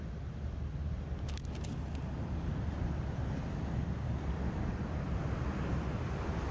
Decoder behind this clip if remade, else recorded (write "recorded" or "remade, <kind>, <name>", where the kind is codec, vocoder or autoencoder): recorded